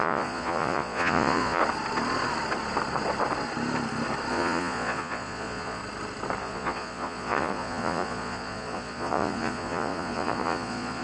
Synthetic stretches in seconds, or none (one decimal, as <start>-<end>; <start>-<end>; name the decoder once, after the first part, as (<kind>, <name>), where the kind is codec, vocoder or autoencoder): 0.0-1.6 (vocoder, Vocos); 4.3-5.8; 6.4-11.0